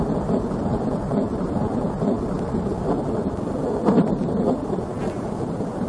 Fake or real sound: real